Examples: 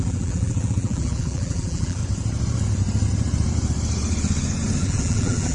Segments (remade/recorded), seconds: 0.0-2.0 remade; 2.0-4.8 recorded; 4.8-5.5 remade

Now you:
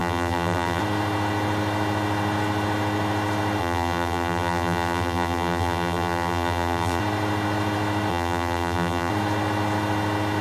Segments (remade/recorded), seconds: 0.0-0.8 remade; 0.8-3.6 recorded; 3.6-7.0 remade; 7.0-8.1 recorded; 8.1-9.1 remade; 9.1-10.4 recorded

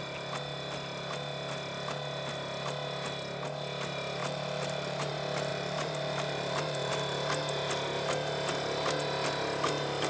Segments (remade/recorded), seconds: 0.0-4.2 recorded; 4.2-5.1 remade; 5.1-5.5 recorded; 5.5-6.9 remade; 6.9-10.1 recorded

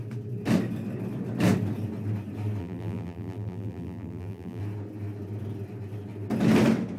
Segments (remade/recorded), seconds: 0.0-2.6 recorded; 2.6-4.6 remade; 4.6-7.0 recorded